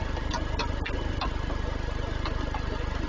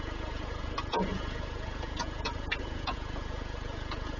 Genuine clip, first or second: first